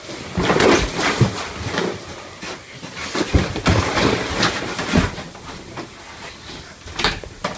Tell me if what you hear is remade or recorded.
recorded